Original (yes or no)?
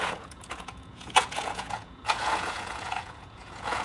no